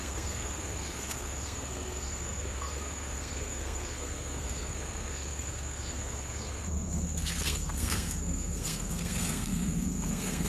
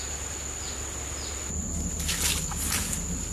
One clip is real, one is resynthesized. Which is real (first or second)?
second